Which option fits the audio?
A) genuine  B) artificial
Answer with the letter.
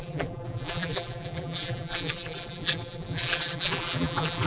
B